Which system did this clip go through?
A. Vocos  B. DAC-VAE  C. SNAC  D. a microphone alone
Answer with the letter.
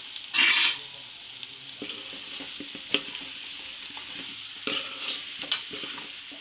D